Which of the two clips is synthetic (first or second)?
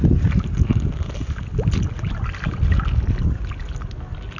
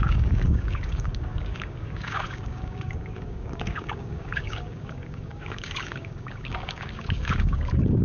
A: second